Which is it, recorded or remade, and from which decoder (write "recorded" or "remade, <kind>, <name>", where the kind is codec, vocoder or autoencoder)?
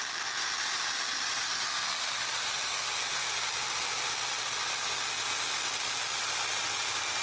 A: recorded